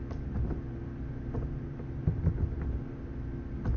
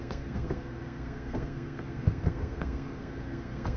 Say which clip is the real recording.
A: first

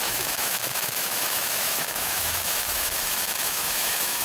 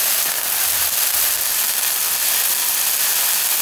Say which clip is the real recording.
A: second